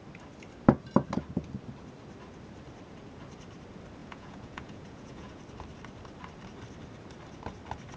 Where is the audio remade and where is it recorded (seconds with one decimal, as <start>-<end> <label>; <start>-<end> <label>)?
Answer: 0.0-4.0 recorded; 4.0-5.4 remade; 5.4-8.0 recorded